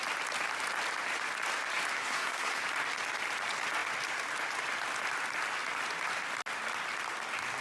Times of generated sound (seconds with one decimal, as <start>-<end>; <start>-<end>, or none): 1.9-2.6